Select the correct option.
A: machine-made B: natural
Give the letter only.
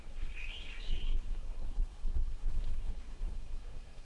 A